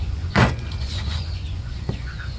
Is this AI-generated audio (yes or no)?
yes